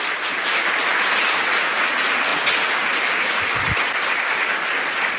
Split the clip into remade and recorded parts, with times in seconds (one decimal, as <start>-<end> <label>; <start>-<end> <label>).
0.0-5.2 recorded